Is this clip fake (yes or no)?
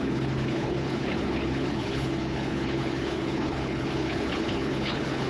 yes